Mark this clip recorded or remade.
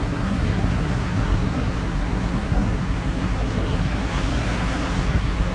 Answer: remade